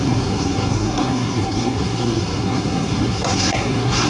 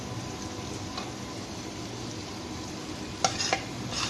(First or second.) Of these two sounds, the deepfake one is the first